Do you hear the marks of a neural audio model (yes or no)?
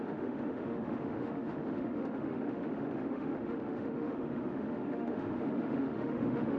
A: yes